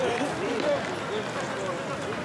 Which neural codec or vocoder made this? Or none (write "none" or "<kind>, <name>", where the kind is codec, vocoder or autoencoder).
none